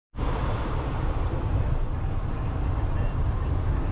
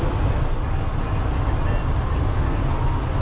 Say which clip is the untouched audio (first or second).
second